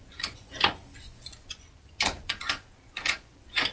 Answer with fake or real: fake